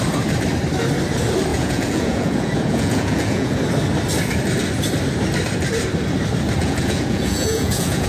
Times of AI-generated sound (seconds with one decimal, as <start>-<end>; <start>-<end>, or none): 1.5-3.6; 6.6-8.1